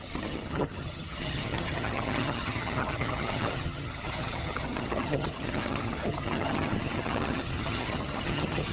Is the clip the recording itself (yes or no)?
no